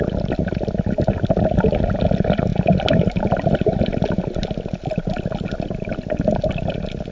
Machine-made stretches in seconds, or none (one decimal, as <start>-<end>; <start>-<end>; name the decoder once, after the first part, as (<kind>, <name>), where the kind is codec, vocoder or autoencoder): none